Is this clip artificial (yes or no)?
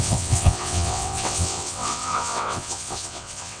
yes